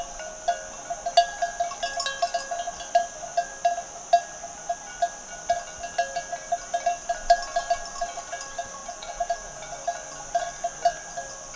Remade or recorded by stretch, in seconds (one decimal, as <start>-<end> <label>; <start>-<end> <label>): 0.0-8.8 recorded; 8.8-9.7 remade; 9.7-11.6 recorded